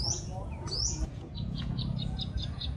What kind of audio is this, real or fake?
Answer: fake